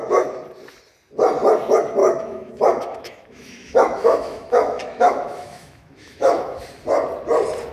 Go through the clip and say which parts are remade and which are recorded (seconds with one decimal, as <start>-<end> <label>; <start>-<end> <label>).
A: 0.0-2.0 recorded; 2.0-6.6 remade; 6.6-7.7 recorded